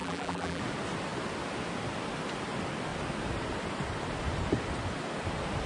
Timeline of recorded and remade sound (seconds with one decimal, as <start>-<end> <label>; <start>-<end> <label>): 0.0-0.6 remade; 0.6-5.7 recorded